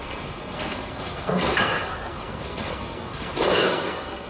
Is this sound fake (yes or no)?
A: yes